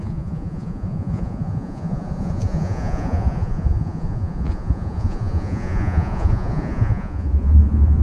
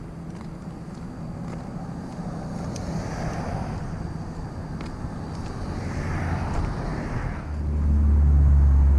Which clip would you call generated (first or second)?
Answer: first